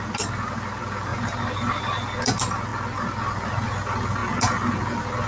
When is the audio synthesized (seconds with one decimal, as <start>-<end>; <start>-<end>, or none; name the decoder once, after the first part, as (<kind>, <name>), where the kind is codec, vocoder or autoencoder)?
none